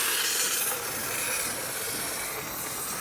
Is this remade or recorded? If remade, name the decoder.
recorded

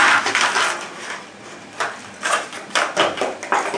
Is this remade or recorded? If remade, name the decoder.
recorded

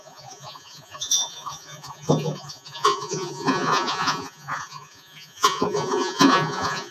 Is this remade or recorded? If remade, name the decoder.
remade, vocoder, Vocos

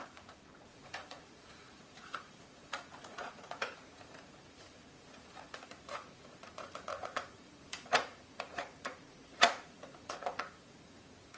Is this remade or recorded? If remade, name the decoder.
remade, vocoder, Vocos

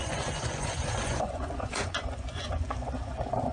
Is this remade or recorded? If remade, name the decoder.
remade, vocoder, Vocos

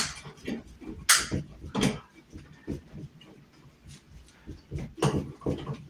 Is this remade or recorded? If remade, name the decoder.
recorded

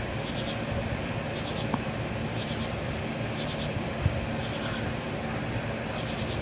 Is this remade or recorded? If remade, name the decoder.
recorded